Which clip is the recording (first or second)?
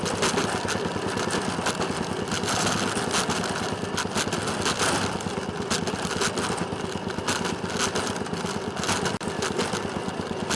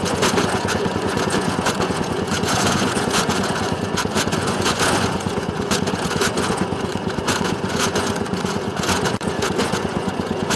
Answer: first